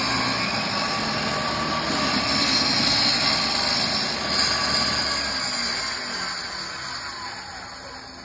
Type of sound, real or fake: real